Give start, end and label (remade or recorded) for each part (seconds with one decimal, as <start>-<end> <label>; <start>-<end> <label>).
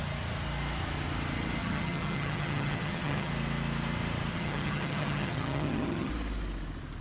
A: 0.0-1.6 recorded; 1.6-3.3 remade; 3.3-4.3 recorded; 4.3-6.1 remade; 6.1-7.0 recorded